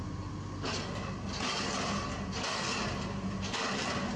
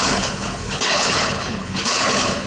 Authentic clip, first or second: first